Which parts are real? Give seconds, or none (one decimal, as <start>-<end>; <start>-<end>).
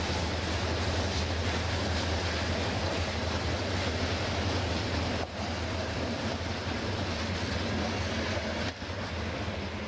0.0-5.8; 6.3-9.9